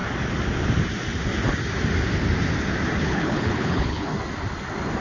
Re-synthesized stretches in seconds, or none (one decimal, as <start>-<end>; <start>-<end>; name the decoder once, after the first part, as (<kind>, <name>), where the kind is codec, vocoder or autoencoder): 3.0-4.1 (codec, HILCodec)